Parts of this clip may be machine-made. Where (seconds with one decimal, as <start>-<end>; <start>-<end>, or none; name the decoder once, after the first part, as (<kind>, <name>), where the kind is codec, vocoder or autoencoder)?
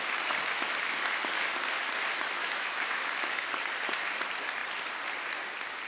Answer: 2.4-3.5 (autoencoder, DAC-VAE)